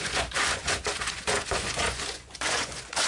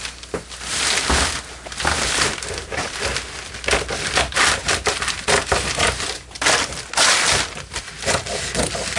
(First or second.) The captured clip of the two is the second